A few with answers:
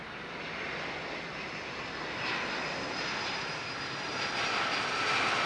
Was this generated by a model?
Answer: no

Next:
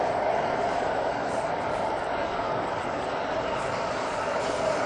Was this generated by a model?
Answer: yes